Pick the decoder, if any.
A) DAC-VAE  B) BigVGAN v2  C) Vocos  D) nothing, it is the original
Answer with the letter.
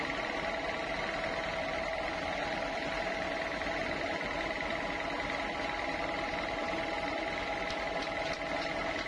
D